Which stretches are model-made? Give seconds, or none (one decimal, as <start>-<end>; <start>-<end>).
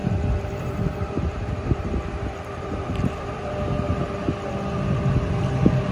0.0-3.5